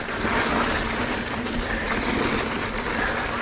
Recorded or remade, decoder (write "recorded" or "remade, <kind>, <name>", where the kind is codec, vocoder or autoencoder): recorded